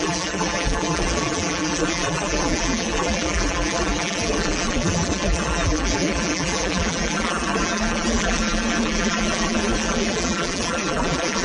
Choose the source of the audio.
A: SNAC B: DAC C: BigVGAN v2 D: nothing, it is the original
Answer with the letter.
C